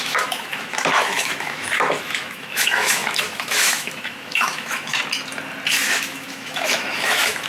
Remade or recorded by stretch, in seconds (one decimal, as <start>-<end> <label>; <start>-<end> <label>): 0.0-5.0 remade; 5.0-5.7 recorded; 5.7-7.5 remade